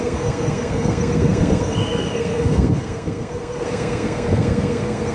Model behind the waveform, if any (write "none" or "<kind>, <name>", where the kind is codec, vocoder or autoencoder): codec, SNAC